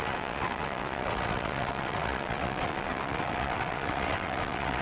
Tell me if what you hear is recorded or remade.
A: remade